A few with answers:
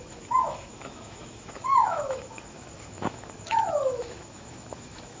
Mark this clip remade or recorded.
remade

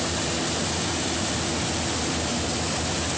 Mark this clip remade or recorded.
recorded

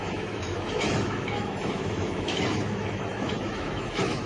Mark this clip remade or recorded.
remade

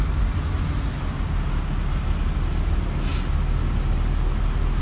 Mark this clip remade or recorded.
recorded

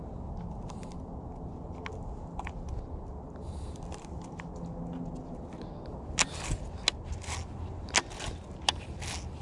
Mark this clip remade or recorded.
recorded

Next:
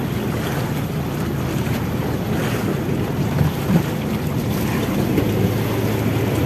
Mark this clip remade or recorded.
recorded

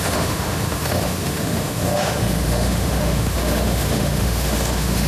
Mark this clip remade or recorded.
remade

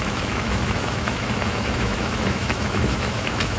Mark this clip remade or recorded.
remade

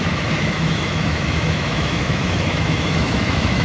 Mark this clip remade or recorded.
remade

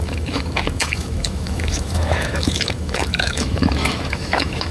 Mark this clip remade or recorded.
remade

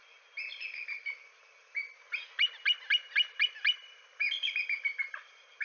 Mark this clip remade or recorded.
recorded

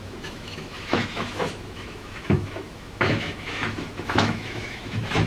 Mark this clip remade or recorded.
remade